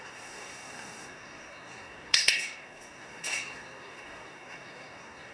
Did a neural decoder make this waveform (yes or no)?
yes